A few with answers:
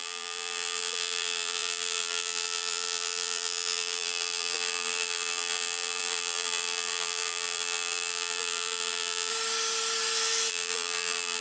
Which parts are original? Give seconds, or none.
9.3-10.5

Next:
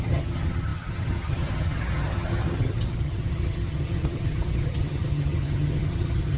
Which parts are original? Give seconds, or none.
none

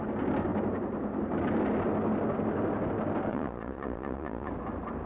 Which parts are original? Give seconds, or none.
0.0-3.3; 4.5-5.1

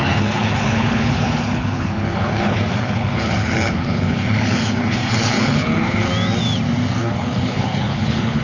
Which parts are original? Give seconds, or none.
6.1-7.0

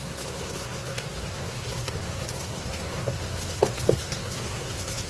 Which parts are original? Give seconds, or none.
none

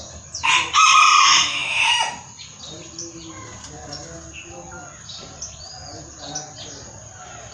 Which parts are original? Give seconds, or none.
0.0-7.5

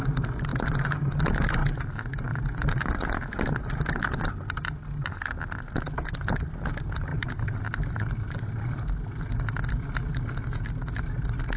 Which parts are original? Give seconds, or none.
0.0-0.5; 1.1-11.6

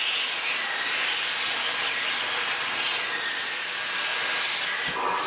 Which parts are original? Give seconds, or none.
0.0-5.3